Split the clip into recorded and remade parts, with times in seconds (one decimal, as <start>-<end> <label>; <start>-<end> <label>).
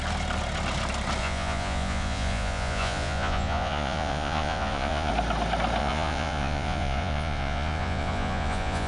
0.0-1.2 recorded; 1.2-5.1 remade; 5.1-5.8 recorded; 5.8-8.9 remade